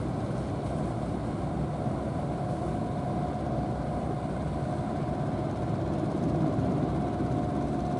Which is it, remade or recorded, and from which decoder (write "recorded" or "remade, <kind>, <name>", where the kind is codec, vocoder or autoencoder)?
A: recorded